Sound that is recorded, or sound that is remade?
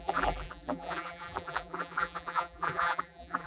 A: remade